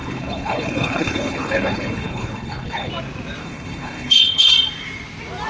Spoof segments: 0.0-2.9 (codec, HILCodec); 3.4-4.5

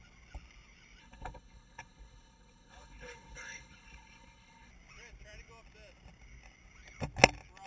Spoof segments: 1.0-4.7 (codec, HILCodec)

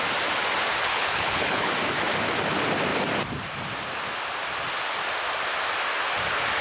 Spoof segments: 0.9-1.7 (codec, HILCodec)

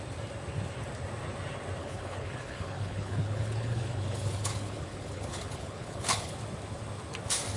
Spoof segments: 1.8-6.4 (codec, HILCodec)

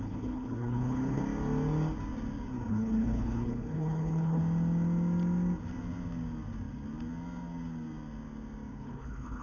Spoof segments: 0.0-1.2 (codec, HILCodec); 2.7-4.4; 8.7-9.4